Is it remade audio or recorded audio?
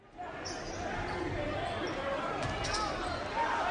recorded